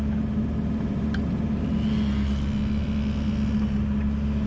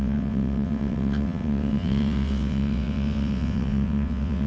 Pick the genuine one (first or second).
first